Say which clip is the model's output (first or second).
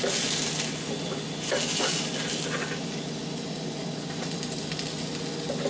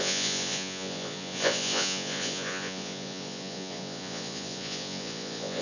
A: second